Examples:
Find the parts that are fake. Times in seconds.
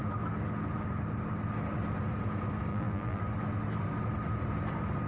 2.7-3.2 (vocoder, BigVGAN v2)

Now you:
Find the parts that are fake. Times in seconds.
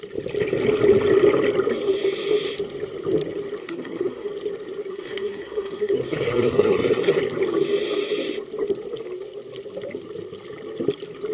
3.6-4.3 (codec, SNAC); 4.9-7.2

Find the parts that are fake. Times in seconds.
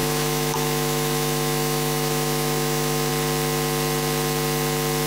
0.0-3.1 (autoencoder, DAC-VAE)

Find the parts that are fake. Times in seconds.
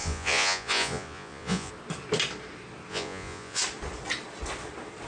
0.0-1.7 (vocoder, Vocos); 2.9-3.6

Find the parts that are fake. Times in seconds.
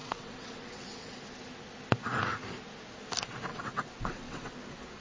0.0-1.1 (vocoder, WaveNeXt); 3.5-4.5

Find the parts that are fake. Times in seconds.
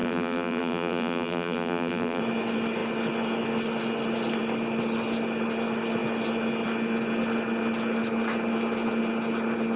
0.0-2.2 (vocoder, BigVGAN v2)